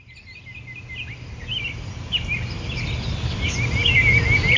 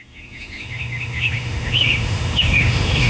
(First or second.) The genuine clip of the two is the first